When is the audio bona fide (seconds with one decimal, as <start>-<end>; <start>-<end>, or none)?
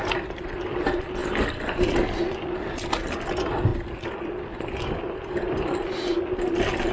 0.0-6.9